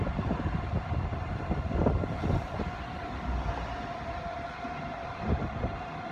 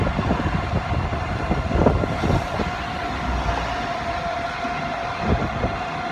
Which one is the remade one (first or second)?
first